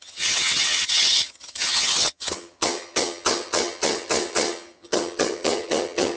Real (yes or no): no